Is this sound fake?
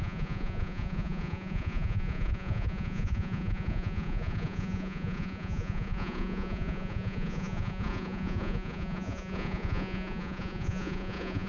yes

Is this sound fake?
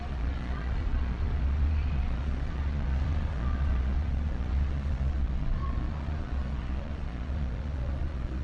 yes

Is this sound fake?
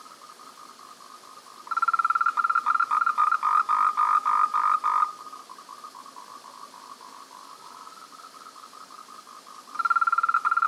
no